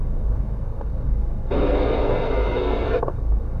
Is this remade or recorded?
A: remade